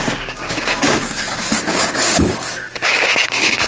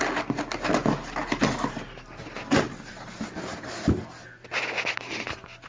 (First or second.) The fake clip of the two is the first